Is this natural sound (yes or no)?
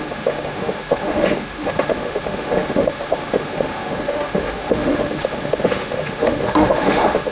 no